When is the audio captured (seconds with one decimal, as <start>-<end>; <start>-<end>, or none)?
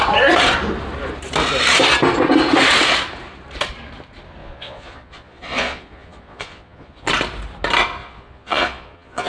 0.0-4.4; 7.1-8.0